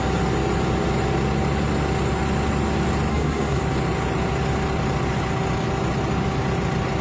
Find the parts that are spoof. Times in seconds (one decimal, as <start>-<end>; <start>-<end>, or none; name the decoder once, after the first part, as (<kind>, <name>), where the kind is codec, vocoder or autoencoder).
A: 3.1-3.6 (codec, SNAC)